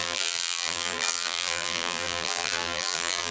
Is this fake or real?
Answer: fake